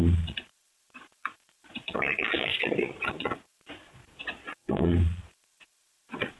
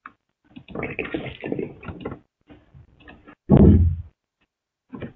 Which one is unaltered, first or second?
second